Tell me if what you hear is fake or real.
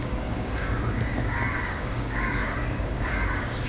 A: fake